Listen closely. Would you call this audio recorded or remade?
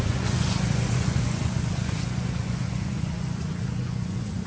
remade